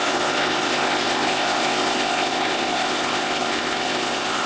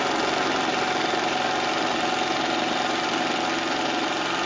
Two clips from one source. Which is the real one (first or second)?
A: second